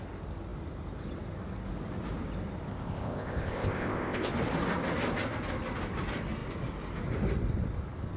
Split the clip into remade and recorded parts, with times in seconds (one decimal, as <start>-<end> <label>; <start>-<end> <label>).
0.0-2.7 recorded; 2.7-4.3 remade; 4.3-8.2 recorded